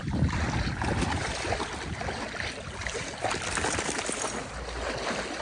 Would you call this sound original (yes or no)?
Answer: yes